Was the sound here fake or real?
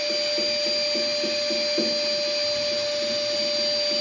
real